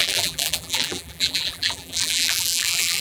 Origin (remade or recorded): remade